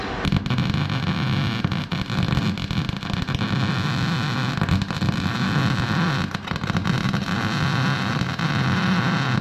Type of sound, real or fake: real